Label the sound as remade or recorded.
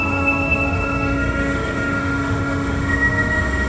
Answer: remade